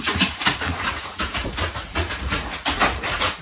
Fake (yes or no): yes